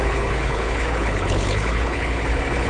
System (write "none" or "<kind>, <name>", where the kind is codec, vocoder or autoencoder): codec, HILCodec